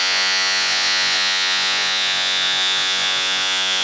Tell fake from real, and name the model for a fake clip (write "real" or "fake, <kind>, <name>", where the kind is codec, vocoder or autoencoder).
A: fake, vocoder, Vocos